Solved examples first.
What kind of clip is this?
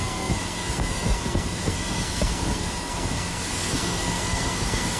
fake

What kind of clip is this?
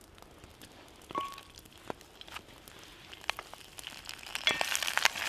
real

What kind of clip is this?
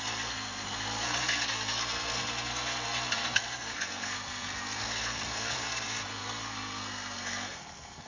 fake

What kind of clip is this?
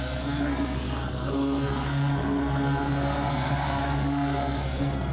fake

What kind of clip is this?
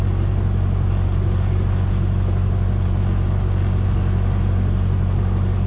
real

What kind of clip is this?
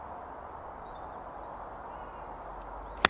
real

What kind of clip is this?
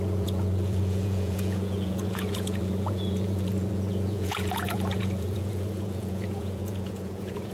fake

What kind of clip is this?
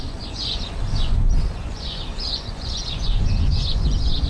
fake